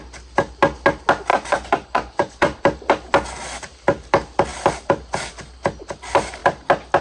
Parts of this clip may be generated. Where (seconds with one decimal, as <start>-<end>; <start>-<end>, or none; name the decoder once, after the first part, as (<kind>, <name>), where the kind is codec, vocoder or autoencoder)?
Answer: 1.3-2.6 (vocoder, Vocos)